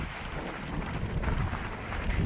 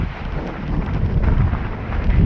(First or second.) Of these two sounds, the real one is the second